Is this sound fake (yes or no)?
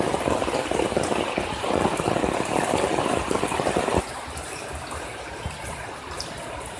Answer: no